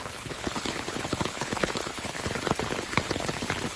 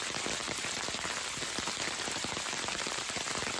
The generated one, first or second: first